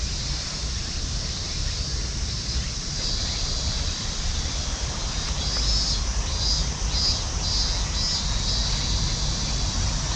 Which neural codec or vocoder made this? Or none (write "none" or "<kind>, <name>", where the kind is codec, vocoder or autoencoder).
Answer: none